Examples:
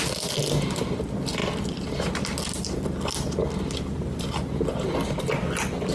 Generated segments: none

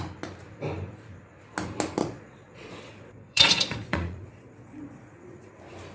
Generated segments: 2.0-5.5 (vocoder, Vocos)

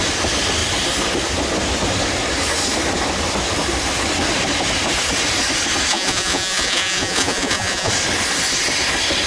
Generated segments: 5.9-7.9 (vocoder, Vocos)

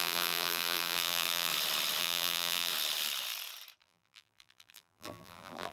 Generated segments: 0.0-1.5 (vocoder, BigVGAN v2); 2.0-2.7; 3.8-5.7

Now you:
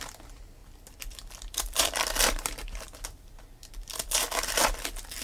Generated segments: 0.6-3.7 (vocoder, BigVGAN v2)